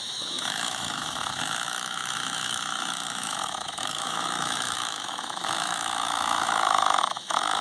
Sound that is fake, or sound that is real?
fake